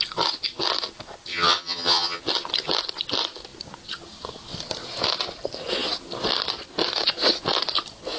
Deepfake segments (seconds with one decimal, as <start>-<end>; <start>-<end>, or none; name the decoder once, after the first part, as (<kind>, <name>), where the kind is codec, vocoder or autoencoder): 1.3-2.2 (vocoder, HiFi-GAN)